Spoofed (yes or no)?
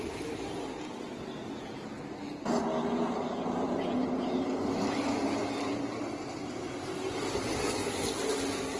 no